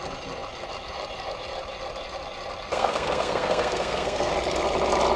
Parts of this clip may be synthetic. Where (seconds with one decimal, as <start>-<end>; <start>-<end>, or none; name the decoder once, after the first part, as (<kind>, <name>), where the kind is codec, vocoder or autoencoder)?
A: 2.7-4.3 (codec, SNAC)